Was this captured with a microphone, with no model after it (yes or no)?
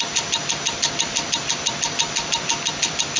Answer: yes